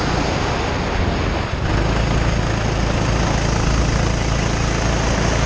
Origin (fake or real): real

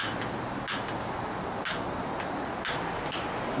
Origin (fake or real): real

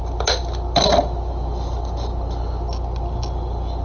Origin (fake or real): real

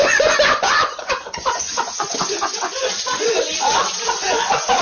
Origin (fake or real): fake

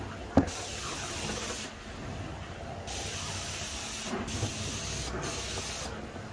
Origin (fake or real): real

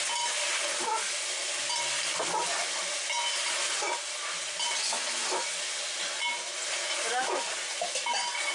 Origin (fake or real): real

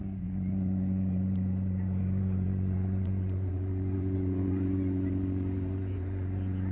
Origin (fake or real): fake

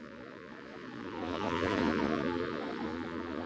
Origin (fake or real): fake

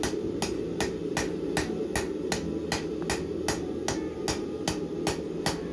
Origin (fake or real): real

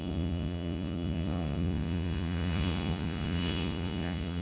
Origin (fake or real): fake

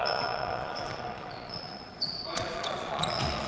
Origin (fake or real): fake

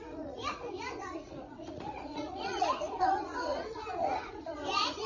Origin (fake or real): fake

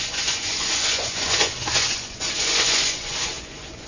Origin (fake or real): fake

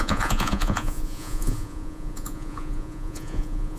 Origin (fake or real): fake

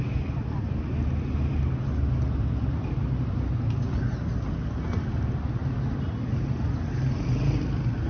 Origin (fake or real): real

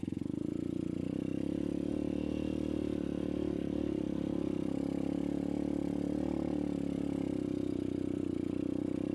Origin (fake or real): real